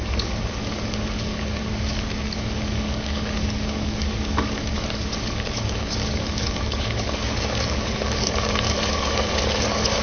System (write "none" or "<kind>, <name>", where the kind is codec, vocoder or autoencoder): codec, DAC